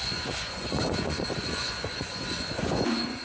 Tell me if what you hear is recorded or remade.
remade